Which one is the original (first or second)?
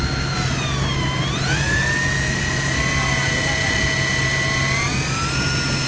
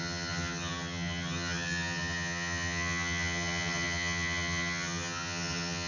first